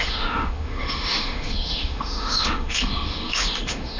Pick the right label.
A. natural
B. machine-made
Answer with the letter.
B